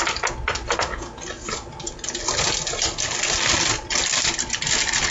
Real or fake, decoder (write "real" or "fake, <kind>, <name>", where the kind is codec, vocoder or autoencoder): real